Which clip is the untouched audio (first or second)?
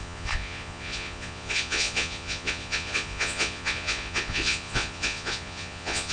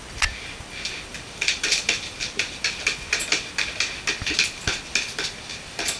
second